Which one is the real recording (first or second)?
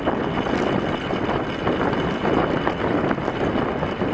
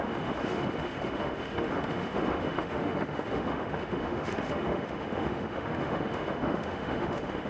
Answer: first